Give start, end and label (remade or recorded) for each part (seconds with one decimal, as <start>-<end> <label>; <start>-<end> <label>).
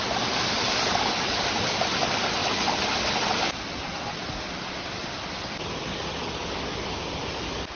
0.0-7.8 recorded